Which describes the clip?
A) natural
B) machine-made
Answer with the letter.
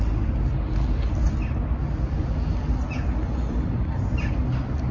A